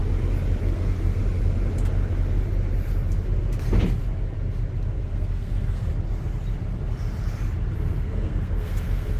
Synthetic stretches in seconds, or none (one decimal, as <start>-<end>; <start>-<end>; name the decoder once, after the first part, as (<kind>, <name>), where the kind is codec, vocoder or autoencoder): 0.6-1.2 (codec, SNAC); 5.0-5.9; 7.8-9.2